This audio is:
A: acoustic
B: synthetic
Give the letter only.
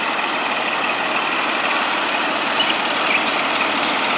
B